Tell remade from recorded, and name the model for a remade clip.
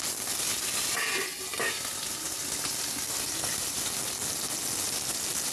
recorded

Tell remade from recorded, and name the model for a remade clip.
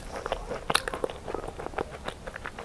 recorded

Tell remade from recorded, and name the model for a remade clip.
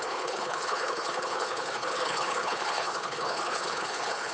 remade, codec, HILCodec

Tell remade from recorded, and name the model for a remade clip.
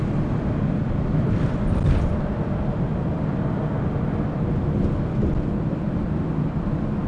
recorded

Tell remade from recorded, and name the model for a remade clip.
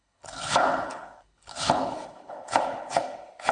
remade, codec, HILCodec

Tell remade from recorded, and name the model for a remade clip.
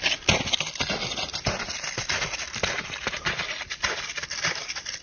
recorded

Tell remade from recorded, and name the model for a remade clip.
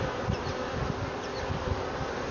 recorded